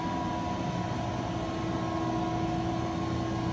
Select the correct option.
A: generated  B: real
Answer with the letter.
B